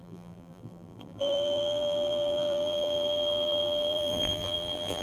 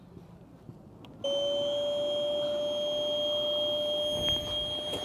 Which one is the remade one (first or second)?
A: first